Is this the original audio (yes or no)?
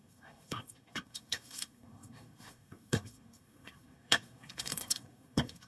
no